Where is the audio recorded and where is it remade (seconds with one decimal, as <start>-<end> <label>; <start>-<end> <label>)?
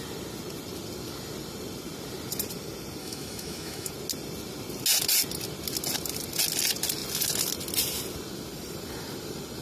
0.0-3.0 recorded; 3.0-3.9 remade; 3.9-9.6 recorded